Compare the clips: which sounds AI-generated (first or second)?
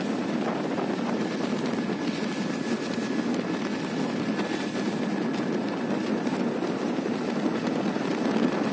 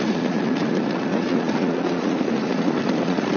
second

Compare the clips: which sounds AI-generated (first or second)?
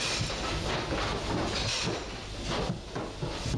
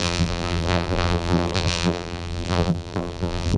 second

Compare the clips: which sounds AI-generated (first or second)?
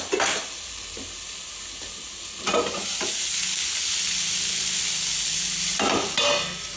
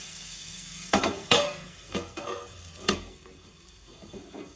second